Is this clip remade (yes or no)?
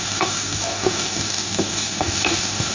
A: yes